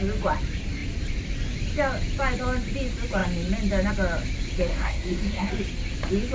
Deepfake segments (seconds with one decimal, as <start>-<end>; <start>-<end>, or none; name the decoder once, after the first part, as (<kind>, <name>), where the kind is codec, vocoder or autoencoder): 4.7-5.5 (codec, SNAC)